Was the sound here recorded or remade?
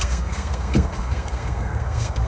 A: remade